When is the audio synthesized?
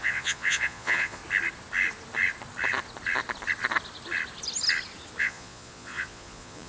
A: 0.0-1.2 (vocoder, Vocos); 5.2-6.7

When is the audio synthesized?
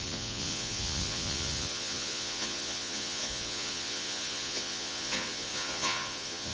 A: 0.0-6.5 (vocoder, Vocos)